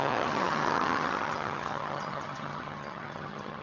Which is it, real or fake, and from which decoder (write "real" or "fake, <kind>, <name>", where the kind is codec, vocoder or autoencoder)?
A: fake, vocoder, HiFi-GAN